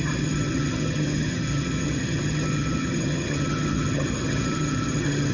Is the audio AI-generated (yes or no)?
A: yes